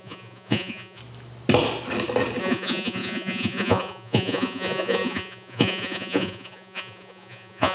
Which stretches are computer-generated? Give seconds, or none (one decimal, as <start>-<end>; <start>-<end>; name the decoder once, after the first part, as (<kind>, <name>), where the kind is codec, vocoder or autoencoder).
0.0-1.0 (vocoder, Vocos); 2.4-7.7